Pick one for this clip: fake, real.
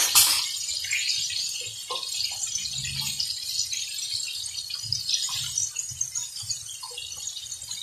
real